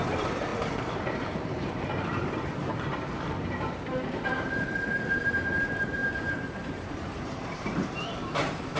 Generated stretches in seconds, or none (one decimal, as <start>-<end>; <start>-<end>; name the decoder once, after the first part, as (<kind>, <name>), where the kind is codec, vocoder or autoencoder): 0.0-8.8 (vocoder, BigVGAN v2)